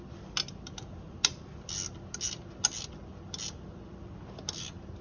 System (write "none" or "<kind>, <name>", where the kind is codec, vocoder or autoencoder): none